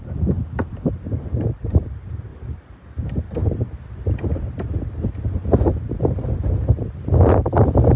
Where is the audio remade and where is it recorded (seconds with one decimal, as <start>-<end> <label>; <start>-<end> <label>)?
0.0-3.4 remade; 3.4-5.5 recorded; 5.5-8.0 remade